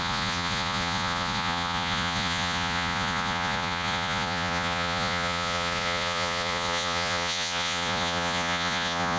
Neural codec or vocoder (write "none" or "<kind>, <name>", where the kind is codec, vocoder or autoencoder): vocoder, Vocos